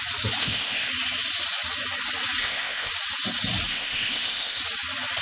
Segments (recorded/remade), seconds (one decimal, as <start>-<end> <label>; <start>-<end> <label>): 0.0-0.4 recorded; 0.4-0.9 remade; 0.9-2.4 recorded; 2.4-2.9 remade; 2.9-3.7 recorded; 3.7-4.6 remade; 4.6-5.2 recorded